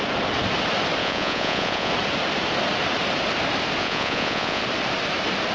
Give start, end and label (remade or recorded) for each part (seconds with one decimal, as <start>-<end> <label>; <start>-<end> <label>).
0.0-1.0 recorded; 1.0-1.9 remade; 1.9-3.8 recorded; 3.8-4.6 remade; 4.6-5.5 recorded